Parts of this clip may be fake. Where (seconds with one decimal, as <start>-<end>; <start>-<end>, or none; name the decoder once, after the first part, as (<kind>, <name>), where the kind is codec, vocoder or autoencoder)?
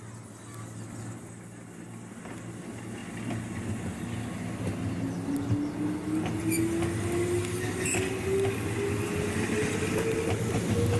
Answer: none